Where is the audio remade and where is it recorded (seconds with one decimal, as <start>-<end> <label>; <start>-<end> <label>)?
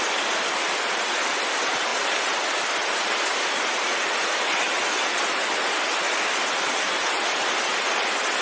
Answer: 0.0-8.4 recorded